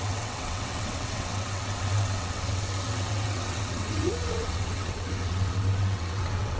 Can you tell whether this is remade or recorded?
remade